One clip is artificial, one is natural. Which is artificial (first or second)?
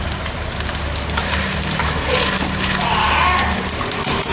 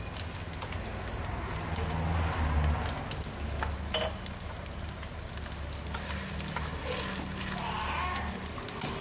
first